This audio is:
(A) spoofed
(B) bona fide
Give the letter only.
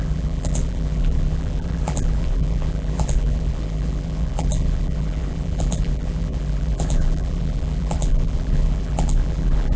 A